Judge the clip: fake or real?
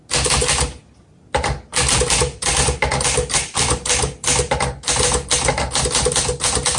real